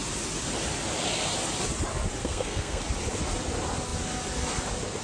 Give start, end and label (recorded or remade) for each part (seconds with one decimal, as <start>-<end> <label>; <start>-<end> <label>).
0.0-2.2 recorded; 2.2-2.8 remade; 2.8-5.0 recorded

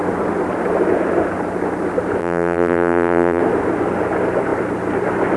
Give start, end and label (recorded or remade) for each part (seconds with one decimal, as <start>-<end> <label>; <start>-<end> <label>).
0.0-2.2 recorded; 2.2-3.4 remade; 3.4-5.4 recorded

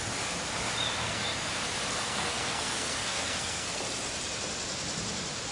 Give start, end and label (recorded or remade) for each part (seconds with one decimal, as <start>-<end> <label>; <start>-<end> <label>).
0.0-1.0 recorded; 1.0-1.5 remade; 1.5-1.9 recorded; 1.9-3.8 remade; 3.8-5.5 recorded

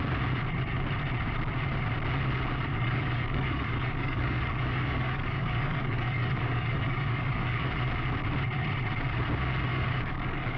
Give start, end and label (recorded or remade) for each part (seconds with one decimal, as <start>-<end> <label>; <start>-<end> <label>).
0.0-2.7 recorded; 2.7-7.7 remade; 7.7-9.7 recorded; 9.7-10.6 remade

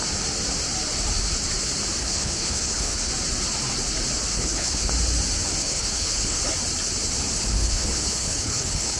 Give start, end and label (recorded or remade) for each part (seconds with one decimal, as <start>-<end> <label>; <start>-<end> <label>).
0.0-2.0 recorded; 2.0-3.1 remade; 3.1-4.3 recorded; 4.3-4.9 remade; 4.9-5.6 recorded; 5.6-6.4 remade; 6.4-7.4 recorded; 7.4-9.0 remade

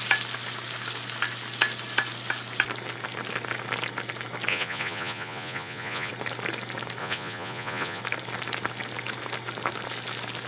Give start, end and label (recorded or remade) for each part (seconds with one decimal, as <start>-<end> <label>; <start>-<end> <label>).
0.0-4.5 recorded; 4.5-6.1 remade; 6.1-7.0 recorded; 7.0-8.0 remade; 8.0-10.5 recorded

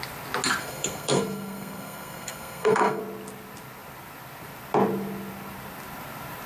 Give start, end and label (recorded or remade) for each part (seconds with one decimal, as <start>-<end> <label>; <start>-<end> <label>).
0.0-0.6 recorded; 0.6-3.0 remade; 3.0-6.5 recorded

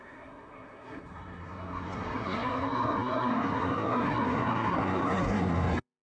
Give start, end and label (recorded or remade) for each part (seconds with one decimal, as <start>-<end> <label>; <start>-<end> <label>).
0.0-6.0 remade